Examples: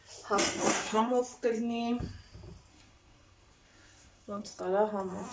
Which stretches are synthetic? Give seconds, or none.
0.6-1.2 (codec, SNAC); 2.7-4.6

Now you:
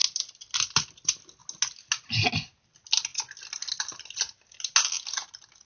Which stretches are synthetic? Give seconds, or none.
none

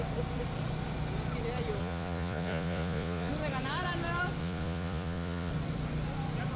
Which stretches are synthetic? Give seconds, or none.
1.8-3.3 (vocoder, Vocos); 4.4-5.5